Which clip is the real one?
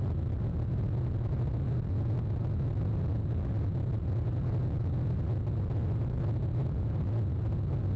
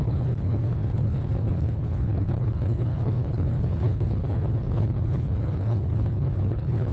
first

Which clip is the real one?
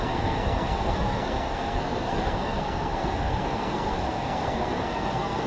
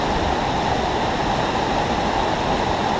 second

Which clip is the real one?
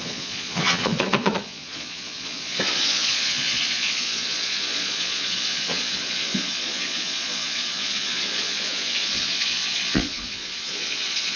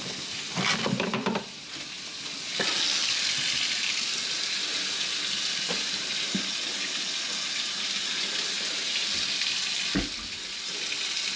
second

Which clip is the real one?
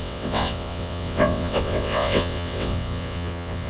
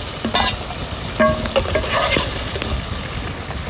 second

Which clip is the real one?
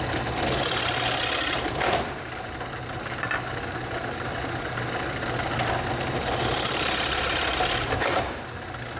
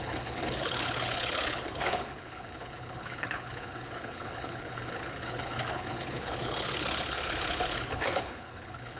first